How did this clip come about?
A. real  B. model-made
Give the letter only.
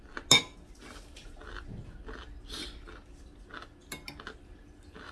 A